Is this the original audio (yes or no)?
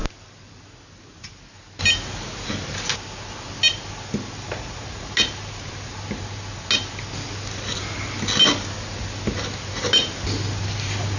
yes